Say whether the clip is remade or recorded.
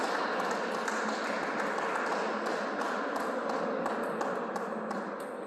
recorded